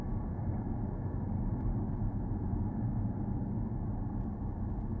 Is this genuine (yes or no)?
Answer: yes